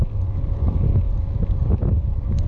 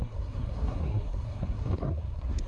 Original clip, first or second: first